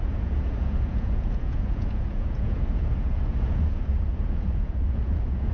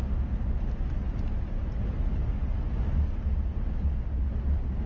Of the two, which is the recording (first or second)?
second